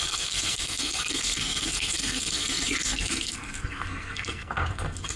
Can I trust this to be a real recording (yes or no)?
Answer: no